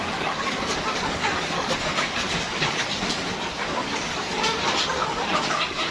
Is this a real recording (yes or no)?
no